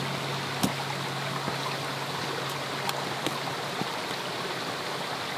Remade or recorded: recorded